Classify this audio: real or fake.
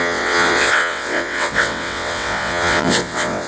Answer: fake